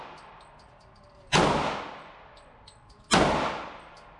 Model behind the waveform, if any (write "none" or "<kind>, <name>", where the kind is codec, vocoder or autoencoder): none